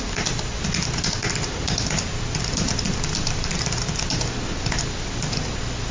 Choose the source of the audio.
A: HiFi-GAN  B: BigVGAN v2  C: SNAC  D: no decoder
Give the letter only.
D